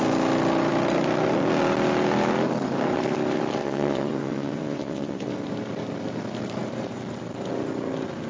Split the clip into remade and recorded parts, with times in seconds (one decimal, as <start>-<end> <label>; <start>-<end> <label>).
0.0-3.6 recorded; 3.6-5.3 remade; 5.3-8.3 recorded